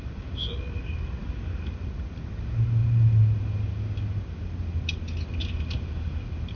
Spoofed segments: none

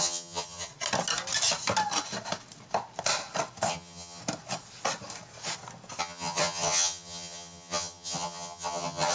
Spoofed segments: 0.0-0.7 (vocoder, HiFi-GAN); 3.7-4.2; 6.0-9.1

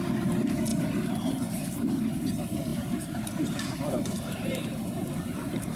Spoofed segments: 0.7-2.0 (vocoder, BigVGAN v2); 2.7-5.8

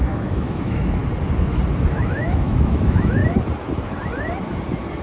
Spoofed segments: 0.0-1.0 (autoencoder, DAC-VAE); 1.9-3.2

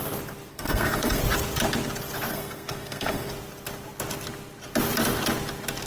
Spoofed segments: 0.5-1.2 (codec, SNAC); 2.3-3.3

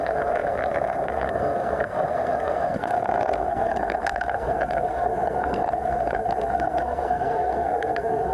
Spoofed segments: 0.0-8.3 (codec, SNAC)